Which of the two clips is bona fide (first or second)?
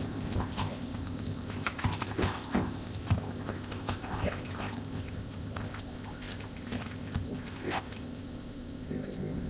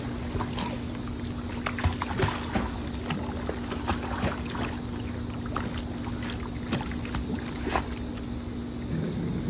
second